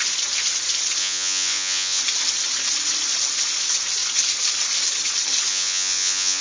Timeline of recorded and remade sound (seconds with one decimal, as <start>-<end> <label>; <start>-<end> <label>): 0.0-1.0 recorded; 1.0-2.0 remade; 2.0-5.5 recorded; 5.5-6.4 remade